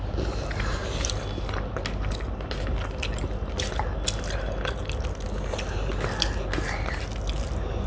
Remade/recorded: recorded